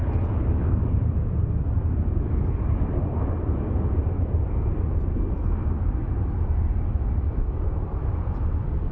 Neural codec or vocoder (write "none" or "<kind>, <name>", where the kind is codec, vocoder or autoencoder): none